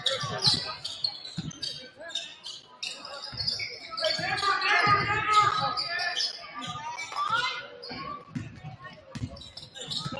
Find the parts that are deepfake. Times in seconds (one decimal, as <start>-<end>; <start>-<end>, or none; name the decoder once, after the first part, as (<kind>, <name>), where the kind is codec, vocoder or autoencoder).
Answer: none